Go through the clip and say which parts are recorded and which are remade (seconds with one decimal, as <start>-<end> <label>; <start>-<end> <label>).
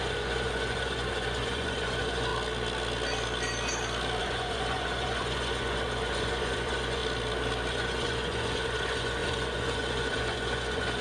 0.0-2.3 remade; 2.3-4.2 recorded; 4.2-7.0 remade; 7.0-7.7 recorded; 7.7-11.0 remade